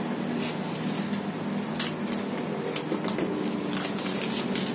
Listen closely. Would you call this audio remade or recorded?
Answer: recorded